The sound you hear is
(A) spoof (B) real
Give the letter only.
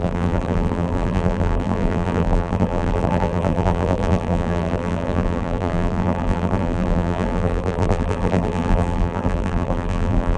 A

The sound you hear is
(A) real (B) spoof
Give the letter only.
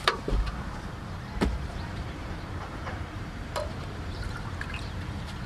B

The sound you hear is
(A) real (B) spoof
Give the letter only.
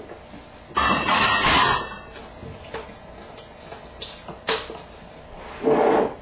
A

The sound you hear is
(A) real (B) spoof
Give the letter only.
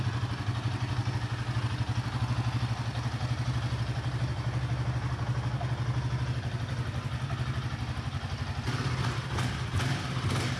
A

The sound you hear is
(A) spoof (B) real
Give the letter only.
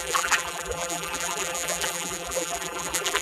A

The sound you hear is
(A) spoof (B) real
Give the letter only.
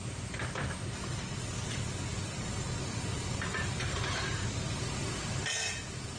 B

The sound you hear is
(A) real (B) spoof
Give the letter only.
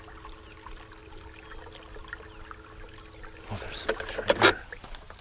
A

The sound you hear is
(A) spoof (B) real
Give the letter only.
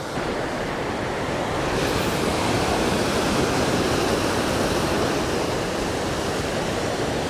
A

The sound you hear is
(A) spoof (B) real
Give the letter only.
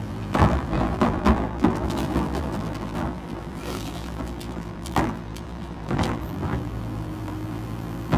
A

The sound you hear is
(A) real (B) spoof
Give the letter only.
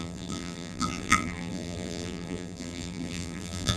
B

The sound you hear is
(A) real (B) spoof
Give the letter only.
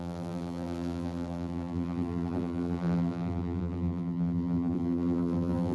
B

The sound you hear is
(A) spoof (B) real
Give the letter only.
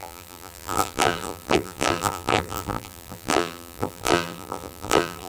A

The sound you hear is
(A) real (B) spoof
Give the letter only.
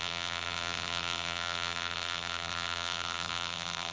B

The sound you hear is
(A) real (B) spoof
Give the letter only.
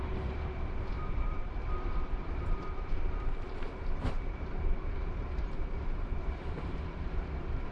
B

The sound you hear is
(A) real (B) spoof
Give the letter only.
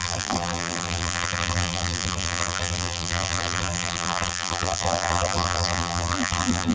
B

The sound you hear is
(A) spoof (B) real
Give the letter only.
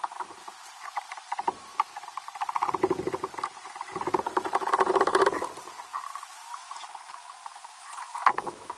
A